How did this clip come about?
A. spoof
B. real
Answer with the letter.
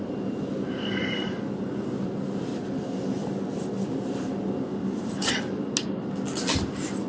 B